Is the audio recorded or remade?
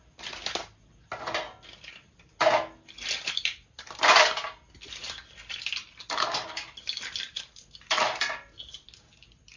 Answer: recorded